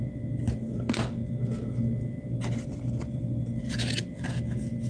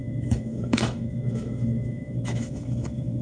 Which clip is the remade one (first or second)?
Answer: second